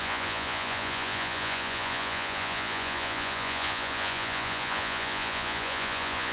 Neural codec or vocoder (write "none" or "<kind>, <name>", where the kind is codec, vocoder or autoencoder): vocoder, Vocos